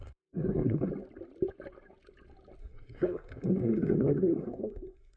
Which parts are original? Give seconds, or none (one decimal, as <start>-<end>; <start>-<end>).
0.9-2.6